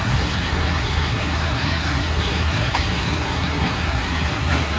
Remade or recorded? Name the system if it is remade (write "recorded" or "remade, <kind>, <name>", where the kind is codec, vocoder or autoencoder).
remade, codec, SNAC